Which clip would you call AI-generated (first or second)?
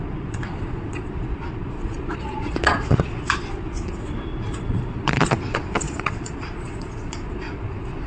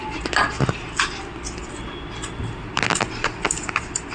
first